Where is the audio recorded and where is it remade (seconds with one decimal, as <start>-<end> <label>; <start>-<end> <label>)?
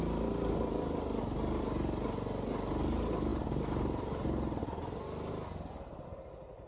0.0-6.7 recorded